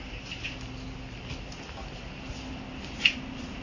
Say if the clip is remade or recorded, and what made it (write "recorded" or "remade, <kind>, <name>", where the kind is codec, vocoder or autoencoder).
recorded